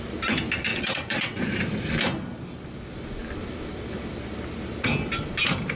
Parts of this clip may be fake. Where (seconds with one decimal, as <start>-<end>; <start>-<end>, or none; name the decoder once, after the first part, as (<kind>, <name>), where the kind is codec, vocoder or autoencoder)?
0.7-1.4 (vocoder, WaveNeXt)

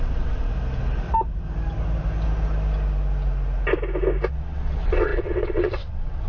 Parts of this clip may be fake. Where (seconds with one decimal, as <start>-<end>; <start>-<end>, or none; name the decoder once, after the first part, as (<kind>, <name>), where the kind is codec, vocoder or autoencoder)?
0.0-0.5 (vocoder, WaveNeXt); 4.3-6.3